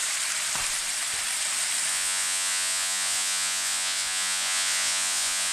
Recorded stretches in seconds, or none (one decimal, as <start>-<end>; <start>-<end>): 0.0-1.9